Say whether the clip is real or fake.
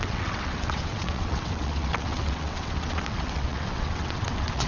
fake